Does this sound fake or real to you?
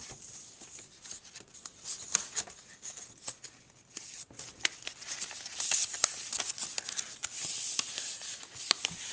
real